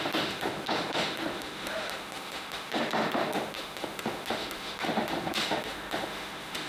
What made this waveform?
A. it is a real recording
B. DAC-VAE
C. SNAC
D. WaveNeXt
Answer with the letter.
B